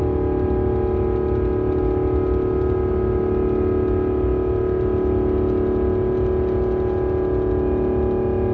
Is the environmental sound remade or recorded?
recorded